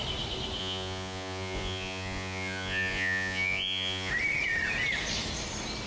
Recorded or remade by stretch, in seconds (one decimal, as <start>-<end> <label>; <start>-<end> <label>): 0.0-0.6 recorded; 0.6-4.1 remade; 4.1-5.9 recorded